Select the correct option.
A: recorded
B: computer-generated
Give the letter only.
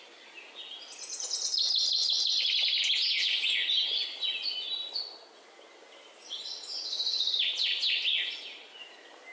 A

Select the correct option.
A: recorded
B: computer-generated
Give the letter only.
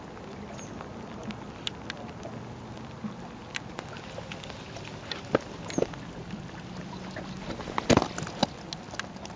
A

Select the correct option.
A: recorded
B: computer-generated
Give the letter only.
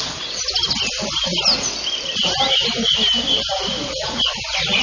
A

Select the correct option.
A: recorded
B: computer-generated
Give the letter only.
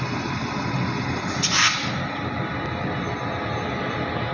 A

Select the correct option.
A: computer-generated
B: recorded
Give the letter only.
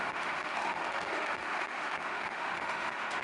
A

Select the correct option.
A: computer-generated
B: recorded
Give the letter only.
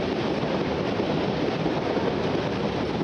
B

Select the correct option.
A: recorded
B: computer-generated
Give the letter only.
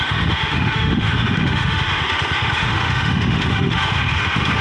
B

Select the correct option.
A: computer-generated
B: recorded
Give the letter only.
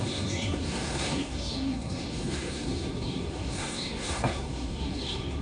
A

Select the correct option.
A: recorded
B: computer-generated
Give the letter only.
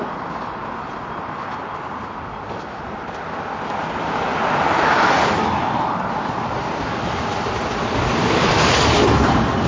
A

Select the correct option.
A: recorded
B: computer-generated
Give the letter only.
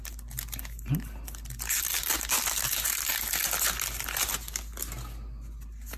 A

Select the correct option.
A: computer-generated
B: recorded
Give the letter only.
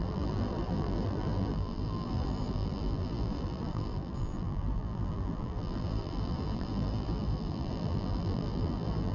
A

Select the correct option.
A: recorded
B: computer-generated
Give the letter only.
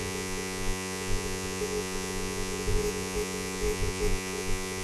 B